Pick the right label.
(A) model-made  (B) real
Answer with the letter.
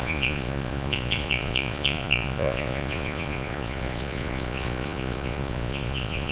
A